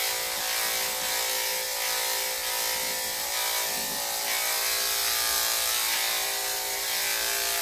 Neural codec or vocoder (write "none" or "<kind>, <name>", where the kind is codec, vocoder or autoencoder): none